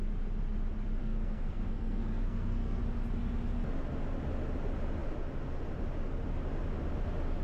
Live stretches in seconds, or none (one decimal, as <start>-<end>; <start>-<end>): 0.0-1.0; 2.8-7.4